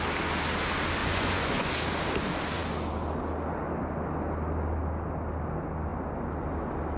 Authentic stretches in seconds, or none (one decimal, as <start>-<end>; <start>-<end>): 0.0-1.0; 1.7-7.0

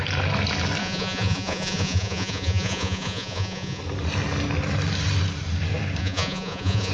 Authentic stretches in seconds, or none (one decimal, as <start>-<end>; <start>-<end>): 0.0-0.8; 3.8-6.0

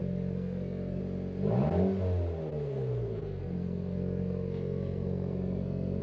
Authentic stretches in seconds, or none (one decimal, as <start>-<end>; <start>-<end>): 1.0-2.5

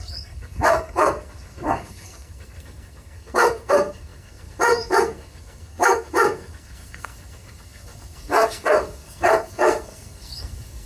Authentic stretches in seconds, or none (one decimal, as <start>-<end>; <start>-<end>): none

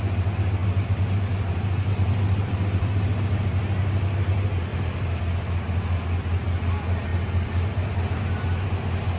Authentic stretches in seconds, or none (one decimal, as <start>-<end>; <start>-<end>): 0.0-0.6; 3.1-4.7; 5.2-7.1; 8.1-9.2